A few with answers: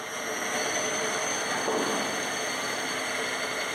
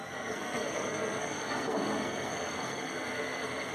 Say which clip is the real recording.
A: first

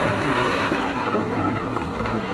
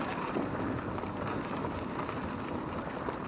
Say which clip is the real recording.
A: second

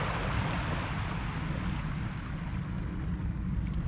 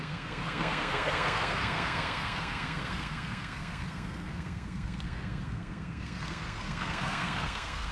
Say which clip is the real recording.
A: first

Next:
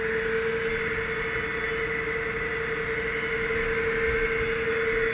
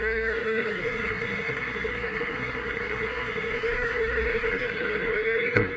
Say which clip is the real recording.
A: first